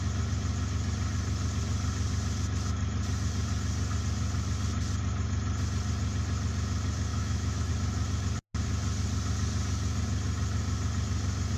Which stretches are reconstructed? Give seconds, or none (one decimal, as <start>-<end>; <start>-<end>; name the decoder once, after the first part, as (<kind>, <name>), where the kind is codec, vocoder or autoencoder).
7.1-7.7 (autoencoder, DAC-VAE)